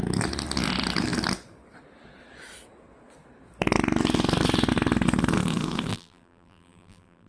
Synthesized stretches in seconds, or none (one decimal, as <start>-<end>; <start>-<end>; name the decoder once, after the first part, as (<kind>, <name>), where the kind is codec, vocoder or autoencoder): 5.9-7.3 (vocoder, BigVGAN v2)